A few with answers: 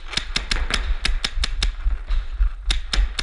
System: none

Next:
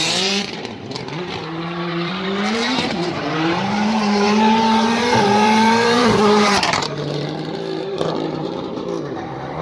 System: vocoder, BigVGAN v2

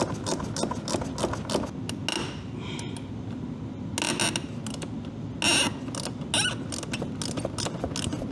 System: none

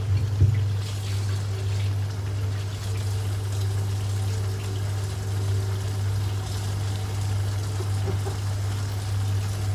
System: none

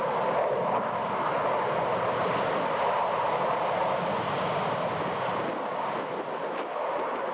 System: none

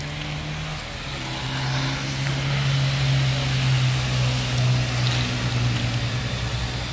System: none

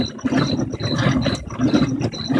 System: none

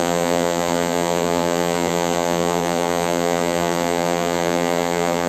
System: vocoder, BigVGAN v2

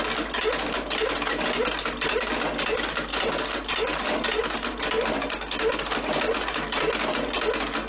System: none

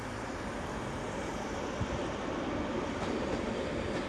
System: vocoder, BigVGAN v2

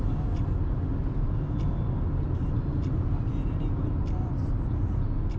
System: none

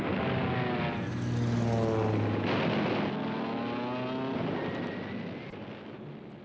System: none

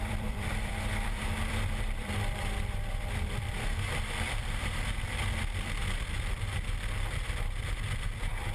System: vocoder, BigVGAN v2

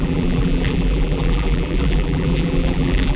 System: vocoder, BigVGAN v2